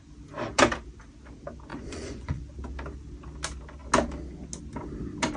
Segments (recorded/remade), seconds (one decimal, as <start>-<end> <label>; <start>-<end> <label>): 0.0-1.7 recorded; 1.7-2.4 remade; 2.4-5.4 recorded